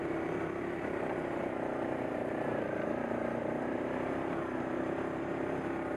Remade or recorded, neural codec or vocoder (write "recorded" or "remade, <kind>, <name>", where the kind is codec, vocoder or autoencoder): remade, vocoder, BigVGAN v2